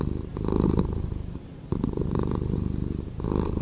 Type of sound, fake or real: real